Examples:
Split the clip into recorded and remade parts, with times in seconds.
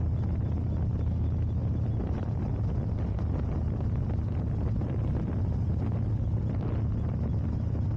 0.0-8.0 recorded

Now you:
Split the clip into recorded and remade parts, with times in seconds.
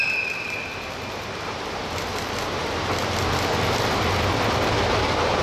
0.0-5.4 recorded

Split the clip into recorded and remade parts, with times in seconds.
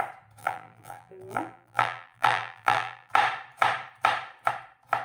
0.0-0.4 recorded; 0.4-3.1 remade; 3.1-5.0 recorded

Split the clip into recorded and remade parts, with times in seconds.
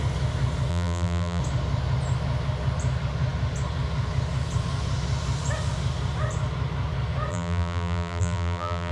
0.0-0.7 recorded; 0.7-1.4 remade; 1.4-7.3 recorded; 7.3-8.9 remade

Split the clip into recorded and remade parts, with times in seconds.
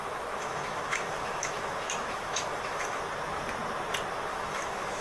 0.0-3.0 remade; 3.0-4.3 recorded; 4.3-5.0 remade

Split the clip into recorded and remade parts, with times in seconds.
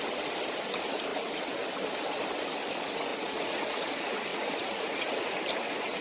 0.0-3.1 recorded; 3.1-3.9 remade; 3.9-4.3 recorded; 4.3-5.3 remade; 5.3-6.0 recorded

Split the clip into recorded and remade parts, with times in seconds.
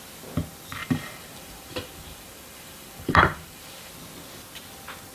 0.0-0.8 recorded; 0.8-3.9 remade; 3.9-5.1 recorded